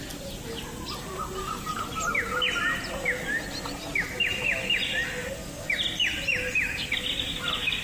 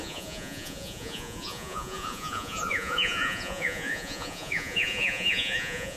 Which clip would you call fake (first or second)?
second